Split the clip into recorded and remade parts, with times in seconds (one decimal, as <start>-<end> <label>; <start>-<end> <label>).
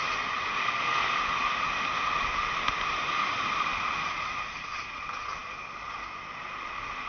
0.0-0.6 recorded; 0.6-1.2 remade; 1.2-7.1 recorded